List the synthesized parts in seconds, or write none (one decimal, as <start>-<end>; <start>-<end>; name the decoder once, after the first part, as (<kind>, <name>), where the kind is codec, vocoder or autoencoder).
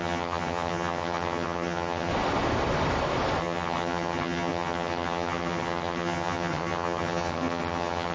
0.0-2.1 (vocoder, HiFi-GAN); 3.4-8.1